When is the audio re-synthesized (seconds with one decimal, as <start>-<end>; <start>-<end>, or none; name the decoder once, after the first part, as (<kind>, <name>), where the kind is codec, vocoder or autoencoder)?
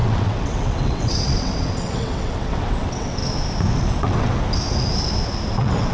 0.0-3.2 (vocoder, WaveNeXt); 3.7-4.3; 5.5-5.9